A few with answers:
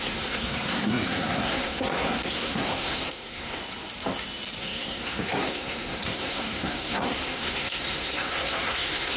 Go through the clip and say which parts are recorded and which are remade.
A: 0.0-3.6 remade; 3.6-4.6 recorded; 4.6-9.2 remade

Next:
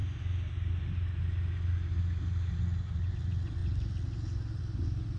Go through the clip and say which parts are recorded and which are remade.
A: 0.0-5.2 recorded

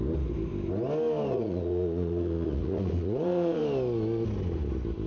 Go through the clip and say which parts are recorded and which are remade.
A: 0.0-1.3 recorded; 1.3-3.6 remade; 3.6-5.1 recorded

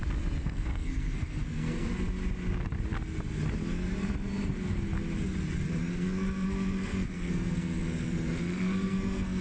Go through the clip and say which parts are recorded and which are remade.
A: 0.0-0.4 recorded; 0.4-1.9 remade; 1.9-5.8 recorded; 5.8-9.4 remade